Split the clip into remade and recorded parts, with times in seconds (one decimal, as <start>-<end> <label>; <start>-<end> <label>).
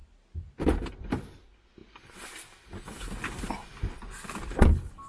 0.0-5.1 recorded